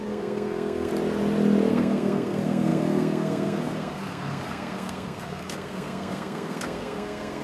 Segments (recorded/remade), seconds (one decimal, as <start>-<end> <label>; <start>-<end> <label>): 0.0-0.9 remade; 0.9-1.7 recorded; 1.7-7.4 remade